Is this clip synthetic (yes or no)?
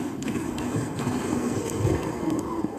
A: yes